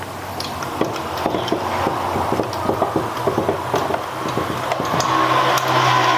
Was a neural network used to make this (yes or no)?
no